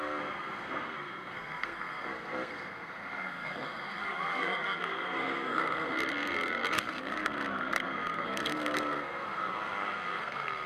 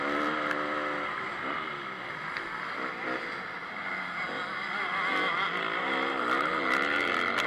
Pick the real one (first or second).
second